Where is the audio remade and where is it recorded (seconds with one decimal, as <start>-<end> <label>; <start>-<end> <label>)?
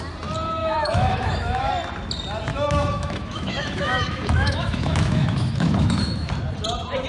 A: 0.0-0.6 recorded; 0.6-1.7 remade; 1.7-2.5 recorded; 2.5-6.3 remade; 6.3-7.1 recorded